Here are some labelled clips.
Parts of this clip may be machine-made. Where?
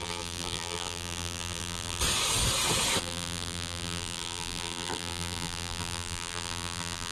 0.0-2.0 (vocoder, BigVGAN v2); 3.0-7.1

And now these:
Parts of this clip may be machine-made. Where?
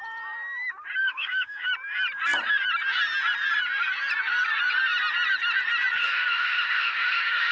1.0-1.7 (autoencoder, DAC-VAE); 6.0-7.5